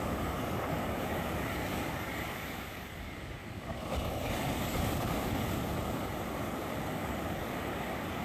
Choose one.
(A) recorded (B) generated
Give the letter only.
B